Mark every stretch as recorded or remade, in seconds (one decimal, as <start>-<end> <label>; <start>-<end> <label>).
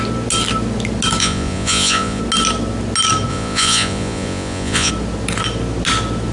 0.0-1.2 recorded; 1.2-2.2 remade; 2.2-3.3 recorded; 3.3-4.9 remade; 4.9-6.3 recorded